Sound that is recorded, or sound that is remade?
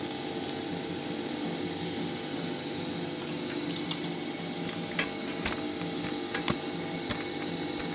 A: recorded